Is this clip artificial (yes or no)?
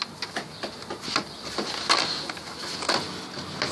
no